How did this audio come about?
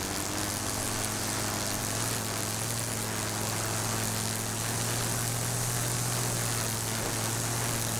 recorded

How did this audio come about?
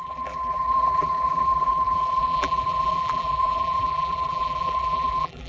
remade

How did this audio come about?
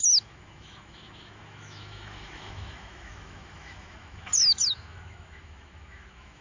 remade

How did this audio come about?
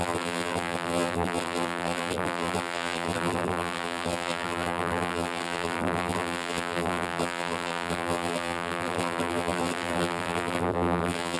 remade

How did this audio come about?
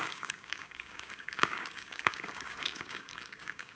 remade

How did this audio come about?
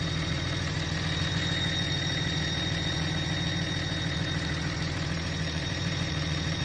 remade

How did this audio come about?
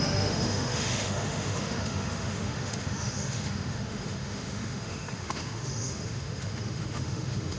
remade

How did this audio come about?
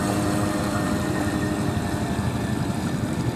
remade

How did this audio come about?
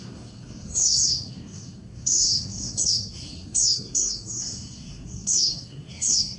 remade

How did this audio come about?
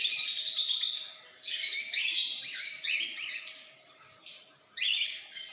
remade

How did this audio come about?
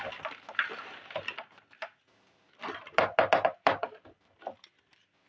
recorded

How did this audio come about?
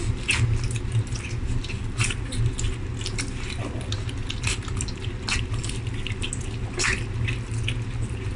recorded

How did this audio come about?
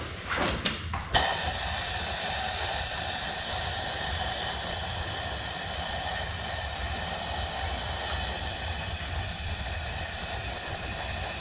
recorded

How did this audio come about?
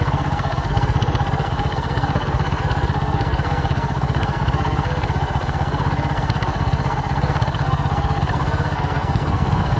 remade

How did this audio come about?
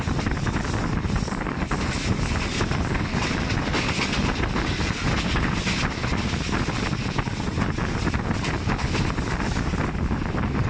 recorded